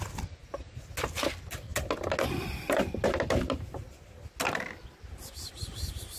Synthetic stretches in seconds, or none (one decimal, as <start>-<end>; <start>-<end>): none